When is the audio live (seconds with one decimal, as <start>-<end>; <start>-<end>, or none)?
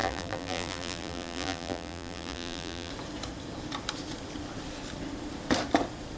2.9-6.2